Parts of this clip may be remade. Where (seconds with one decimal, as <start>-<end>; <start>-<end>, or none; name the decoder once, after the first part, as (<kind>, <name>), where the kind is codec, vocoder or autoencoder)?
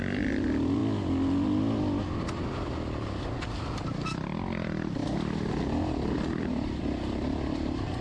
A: 0.0-0.8 (vocoder, BigVGAN v2); 3.8-8.0